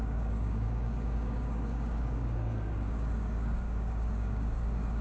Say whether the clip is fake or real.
fake